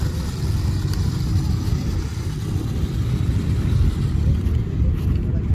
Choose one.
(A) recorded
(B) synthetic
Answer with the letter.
A